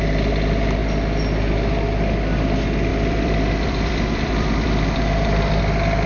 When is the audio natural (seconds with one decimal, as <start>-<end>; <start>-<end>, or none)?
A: 0.0-2.9; 5.6-6.1